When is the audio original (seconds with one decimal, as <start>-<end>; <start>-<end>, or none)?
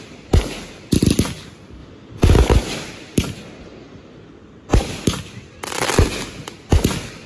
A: 0.0-7.3